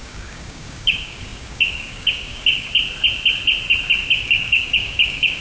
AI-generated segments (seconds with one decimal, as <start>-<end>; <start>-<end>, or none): 0.0-2.7; 4.1-5.4